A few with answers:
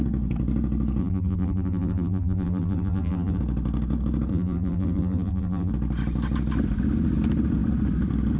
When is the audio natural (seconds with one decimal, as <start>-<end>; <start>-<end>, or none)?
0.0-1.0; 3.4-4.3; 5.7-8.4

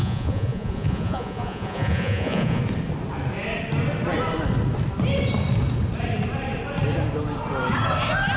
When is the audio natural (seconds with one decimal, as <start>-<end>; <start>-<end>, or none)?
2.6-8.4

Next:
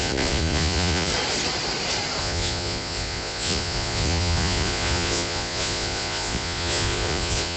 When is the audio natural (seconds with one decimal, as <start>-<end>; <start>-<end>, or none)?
1.1-2.2